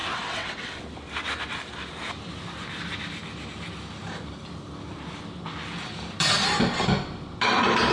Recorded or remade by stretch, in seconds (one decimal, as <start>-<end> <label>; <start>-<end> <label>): 0.0-0.8 remade; 0.8-7.9 recorded